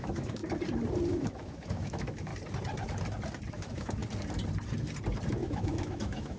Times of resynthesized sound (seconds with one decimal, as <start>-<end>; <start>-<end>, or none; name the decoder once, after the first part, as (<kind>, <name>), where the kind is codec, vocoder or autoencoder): 0.0-0.4 (autoencoder, DAC-VAE); 1.1-2.3; 3.5-4.0; 5.3-6.4